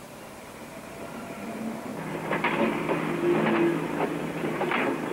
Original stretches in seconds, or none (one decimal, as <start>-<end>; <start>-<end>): 1.9-4.2